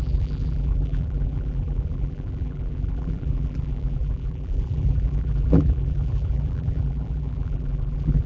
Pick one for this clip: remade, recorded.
remade